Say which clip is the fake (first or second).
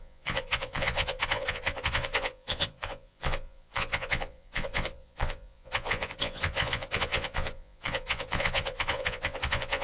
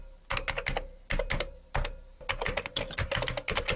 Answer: first